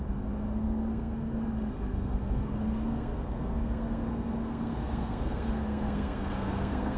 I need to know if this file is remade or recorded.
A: remade